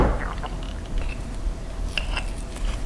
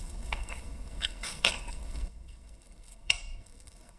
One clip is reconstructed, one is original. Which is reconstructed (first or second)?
second